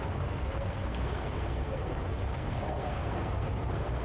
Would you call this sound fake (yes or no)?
yes